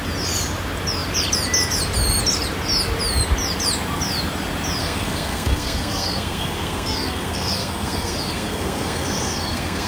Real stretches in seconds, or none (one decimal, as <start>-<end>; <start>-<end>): 0.0-4.8